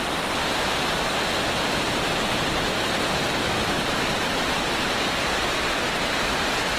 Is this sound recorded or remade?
recorded